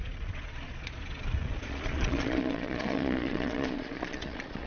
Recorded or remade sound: remade